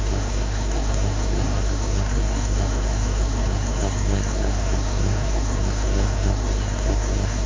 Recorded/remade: remade